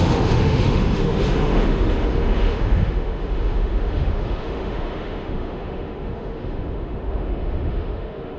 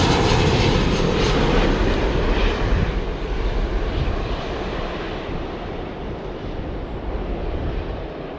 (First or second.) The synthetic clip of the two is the first